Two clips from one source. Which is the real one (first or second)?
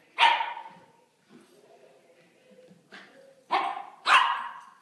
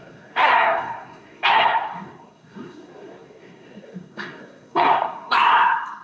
first